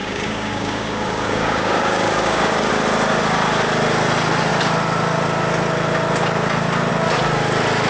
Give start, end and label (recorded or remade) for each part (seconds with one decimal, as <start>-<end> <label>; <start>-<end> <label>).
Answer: 0.0-2.7 remade; 2.7-7.9 recorded